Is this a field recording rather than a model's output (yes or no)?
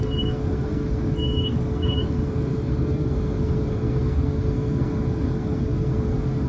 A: no